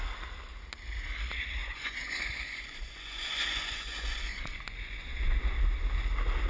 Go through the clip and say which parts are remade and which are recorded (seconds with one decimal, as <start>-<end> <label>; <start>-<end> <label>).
0.0-1.6 recorded; 1.6-5.5 remade; 5.5-6.5 recorded